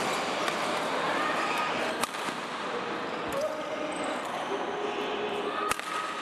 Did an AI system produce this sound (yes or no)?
no